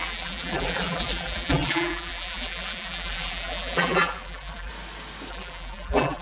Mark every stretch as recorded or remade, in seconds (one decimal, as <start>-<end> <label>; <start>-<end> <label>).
0.0-4.7 remade; 4.7-5.3 recorded; 5.3-6.2 remade